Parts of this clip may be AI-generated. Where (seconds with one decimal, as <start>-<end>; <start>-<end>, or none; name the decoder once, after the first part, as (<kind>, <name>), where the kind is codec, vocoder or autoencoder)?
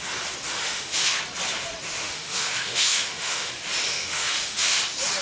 0.6-1.2 (autoencoder, DAC-VAE); 2.0-3.5; 3.9-4.8